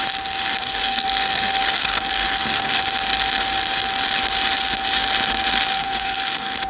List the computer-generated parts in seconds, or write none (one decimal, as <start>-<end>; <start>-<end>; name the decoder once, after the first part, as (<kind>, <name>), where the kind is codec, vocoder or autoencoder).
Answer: 0.6-2.8 (codec, SNAC); 5.7-6.7